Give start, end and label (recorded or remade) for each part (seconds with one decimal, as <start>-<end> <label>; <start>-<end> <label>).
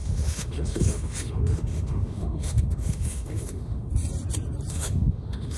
0.0-3.9 remade; 3.9-4.7 recorded; 4.7-5.6 remade